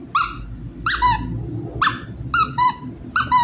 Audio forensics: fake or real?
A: real